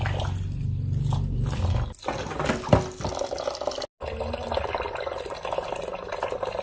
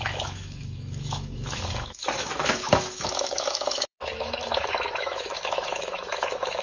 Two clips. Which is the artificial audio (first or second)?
second